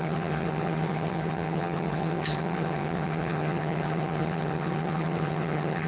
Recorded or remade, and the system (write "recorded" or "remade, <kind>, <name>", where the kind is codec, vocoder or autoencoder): remade, vocoder, HiFi-GAN